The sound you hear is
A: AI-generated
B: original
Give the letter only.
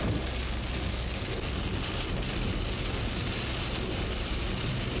B